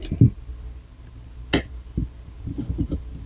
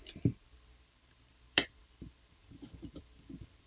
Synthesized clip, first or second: second